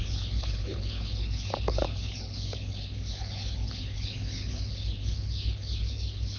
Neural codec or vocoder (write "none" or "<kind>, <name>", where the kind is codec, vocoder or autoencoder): codec, HILCodec